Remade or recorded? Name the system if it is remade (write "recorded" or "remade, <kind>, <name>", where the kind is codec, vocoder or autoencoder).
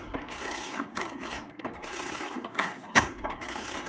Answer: remade, codec, SNAC